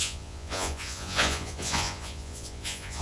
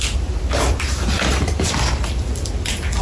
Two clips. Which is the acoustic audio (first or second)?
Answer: second